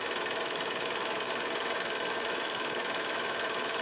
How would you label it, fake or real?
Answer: fake